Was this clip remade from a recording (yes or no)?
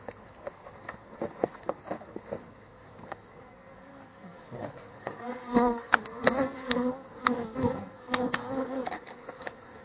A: yes